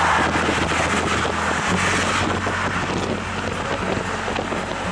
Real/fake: real